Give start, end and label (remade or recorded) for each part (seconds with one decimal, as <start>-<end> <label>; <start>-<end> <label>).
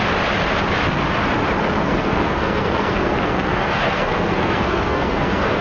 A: 0.0-1.8 recorded; 1.8-5.6 remade